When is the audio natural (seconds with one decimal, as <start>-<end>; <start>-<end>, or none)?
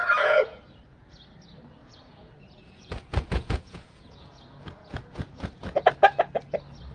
0.6-1.8; 5.9-6.9